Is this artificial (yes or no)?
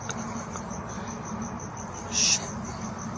no